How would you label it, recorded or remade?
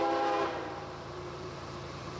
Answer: remade